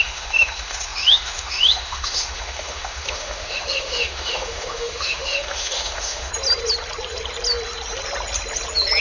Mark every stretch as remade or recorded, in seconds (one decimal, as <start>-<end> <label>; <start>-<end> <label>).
0.0-6.3 remade; 6.3-9.0 recorded